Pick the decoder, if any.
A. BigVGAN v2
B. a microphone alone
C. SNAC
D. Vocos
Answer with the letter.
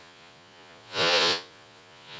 D